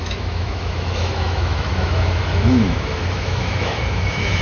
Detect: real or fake fake